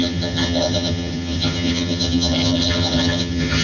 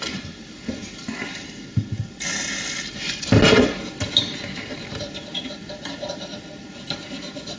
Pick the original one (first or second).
second